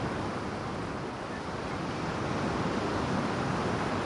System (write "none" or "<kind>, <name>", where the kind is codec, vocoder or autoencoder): none